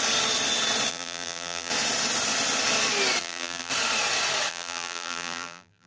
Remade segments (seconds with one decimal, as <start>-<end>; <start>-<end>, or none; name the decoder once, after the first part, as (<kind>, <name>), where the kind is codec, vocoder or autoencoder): 0.9-1.7 (vocoder, BigVGAN v2); 3.2-3.7; 4.5-5.9